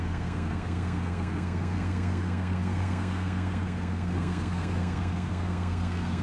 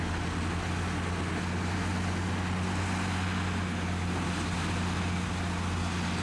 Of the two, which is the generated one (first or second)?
first